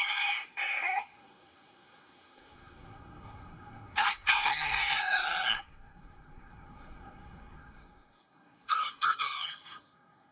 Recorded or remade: remade